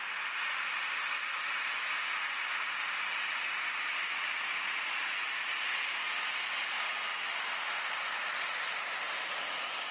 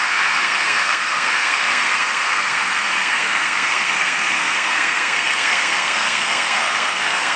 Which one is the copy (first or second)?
second